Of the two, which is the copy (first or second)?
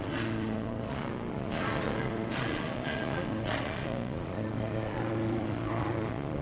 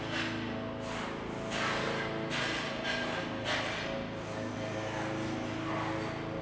first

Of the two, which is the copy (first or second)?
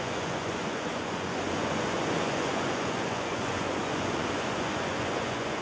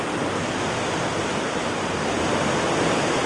first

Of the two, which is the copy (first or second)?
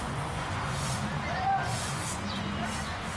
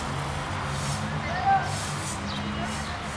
first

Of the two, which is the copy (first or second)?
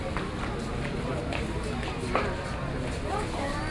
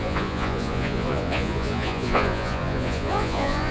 second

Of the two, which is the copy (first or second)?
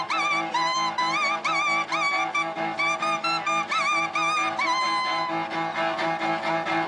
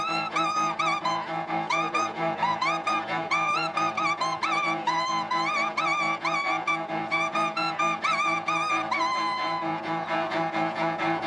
second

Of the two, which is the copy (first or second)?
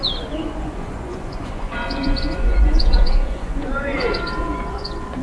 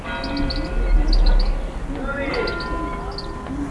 first